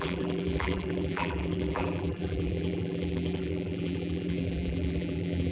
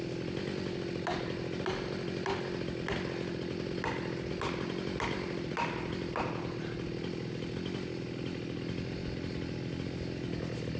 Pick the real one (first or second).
second